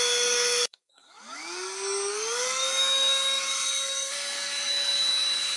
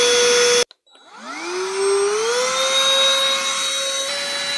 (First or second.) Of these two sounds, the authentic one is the second